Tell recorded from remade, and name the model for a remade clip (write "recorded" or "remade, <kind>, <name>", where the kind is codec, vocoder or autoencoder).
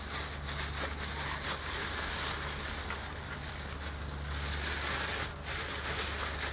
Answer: recorded